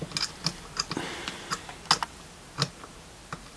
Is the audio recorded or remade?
recorded